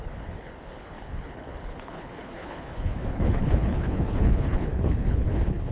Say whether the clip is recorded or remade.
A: remade